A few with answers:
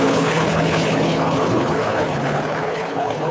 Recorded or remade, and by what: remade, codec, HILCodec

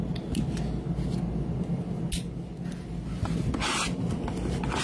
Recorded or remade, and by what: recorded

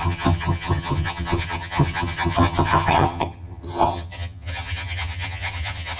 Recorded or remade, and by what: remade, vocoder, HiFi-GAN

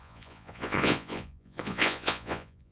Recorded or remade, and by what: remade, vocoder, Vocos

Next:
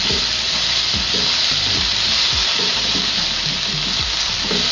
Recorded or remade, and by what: recorded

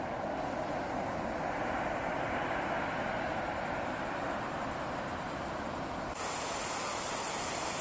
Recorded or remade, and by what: recorded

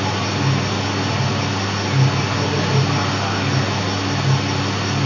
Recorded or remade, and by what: recorded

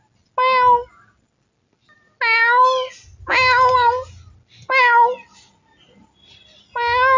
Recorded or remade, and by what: recorded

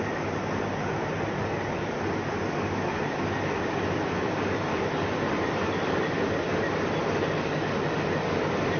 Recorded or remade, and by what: recorded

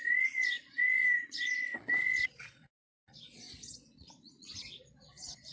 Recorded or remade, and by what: remade, vocoder, Vocos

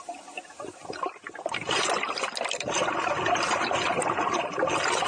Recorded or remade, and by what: recorded